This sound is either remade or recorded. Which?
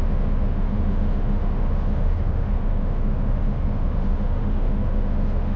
remade